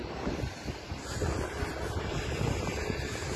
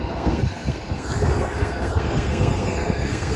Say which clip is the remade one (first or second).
second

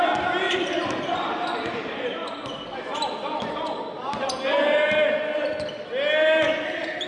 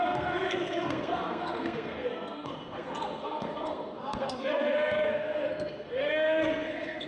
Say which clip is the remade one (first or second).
second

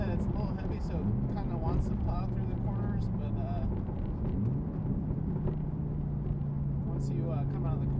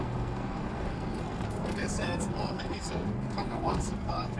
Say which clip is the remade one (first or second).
second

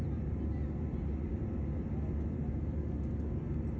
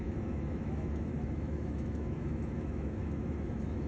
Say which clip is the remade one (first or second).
second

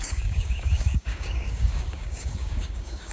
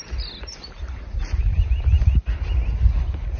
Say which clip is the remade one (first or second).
first